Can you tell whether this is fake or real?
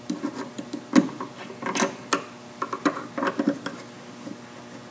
real